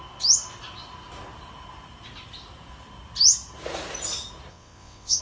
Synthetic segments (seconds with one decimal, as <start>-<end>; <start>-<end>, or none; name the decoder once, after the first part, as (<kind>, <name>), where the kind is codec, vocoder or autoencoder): 4.5-5.2 (vocoder, WaveNeXt)